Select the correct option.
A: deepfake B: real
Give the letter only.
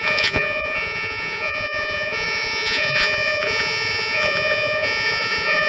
A